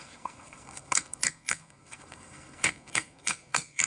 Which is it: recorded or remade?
remade